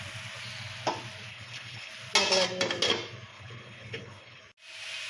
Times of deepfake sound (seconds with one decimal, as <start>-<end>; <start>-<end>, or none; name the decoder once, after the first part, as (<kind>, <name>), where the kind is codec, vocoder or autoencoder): 1.3-1.9 (codec, HILCodec); 3.3-4.4